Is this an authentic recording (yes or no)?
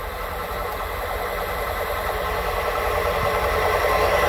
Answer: yes